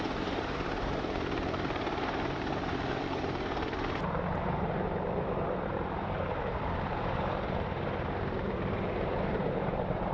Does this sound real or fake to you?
fake